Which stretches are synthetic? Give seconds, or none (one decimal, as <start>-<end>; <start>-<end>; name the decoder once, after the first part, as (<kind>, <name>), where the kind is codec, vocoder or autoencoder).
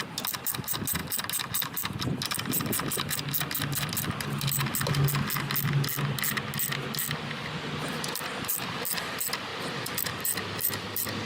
none